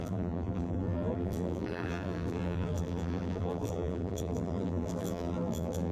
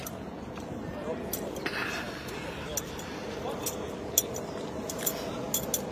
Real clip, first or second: second